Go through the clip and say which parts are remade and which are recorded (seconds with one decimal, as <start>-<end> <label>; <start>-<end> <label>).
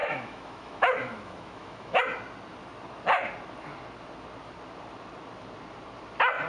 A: 0.0-2.0 remade; 2.0-6.5 recorded